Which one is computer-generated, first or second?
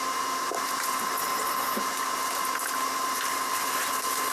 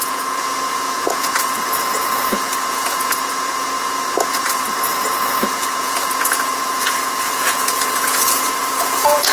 second